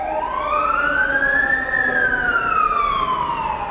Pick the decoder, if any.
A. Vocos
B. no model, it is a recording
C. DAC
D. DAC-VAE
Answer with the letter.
B